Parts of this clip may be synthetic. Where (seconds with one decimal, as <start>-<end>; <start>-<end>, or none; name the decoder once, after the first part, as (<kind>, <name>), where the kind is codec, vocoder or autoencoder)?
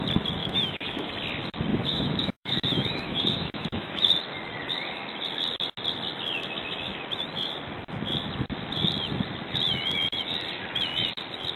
0.4-1.1 (autoencoder, DAC-VAE); 1.7-4.1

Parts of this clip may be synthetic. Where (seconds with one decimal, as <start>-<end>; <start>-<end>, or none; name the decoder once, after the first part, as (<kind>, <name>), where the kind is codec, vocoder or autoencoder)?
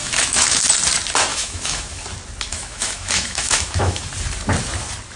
0.0-0.6 (autoencoder, DAC-VAE); 1.3-2.0; 2.5-4.1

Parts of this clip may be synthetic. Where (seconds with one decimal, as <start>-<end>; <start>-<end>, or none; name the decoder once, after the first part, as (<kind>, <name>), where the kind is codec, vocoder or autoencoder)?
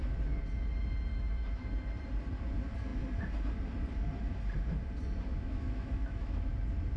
1.1-1.7 (autoencoder, DAC-VAE); 5.3-6.5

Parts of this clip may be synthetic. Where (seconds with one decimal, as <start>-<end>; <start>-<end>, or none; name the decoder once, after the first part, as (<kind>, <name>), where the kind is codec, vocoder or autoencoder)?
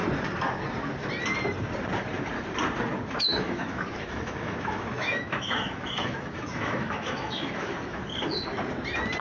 3.3-8.0 (autoencoder, DAC-VAE)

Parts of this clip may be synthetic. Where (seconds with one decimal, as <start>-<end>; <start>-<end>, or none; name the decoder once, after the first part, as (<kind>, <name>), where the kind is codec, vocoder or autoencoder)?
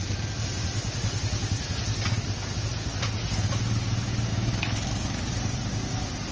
4.3-5.3 (autoencoder, DAC-VAE)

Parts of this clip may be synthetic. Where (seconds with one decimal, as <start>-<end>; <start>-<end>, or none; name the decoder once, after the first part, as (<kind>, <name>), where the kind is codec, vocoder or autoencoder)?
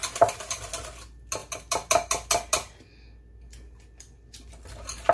none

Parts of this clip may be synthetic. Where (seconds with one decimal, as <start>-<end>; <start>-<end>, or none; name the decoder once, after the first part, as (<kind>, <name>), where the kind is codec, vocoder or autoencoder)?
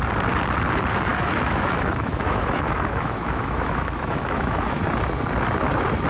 1.1-4.8 (autoencoder, DAC-VAE)